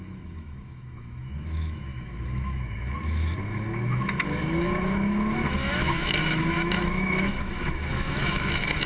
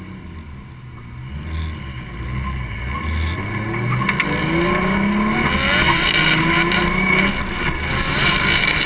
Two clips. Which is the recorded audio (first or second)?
second